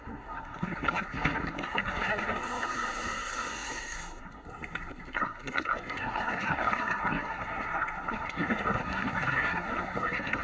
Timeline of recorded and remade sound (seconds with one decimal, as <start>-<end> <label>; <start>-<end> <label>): 0.0-10.4 remade